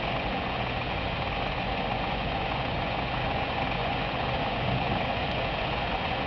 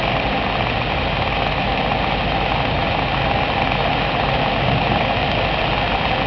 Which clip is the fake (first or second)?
first